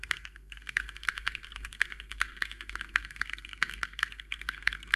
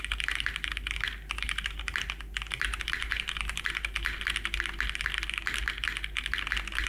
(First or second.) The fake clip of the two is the first